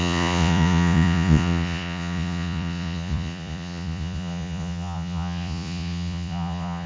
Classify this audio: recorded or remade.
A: remade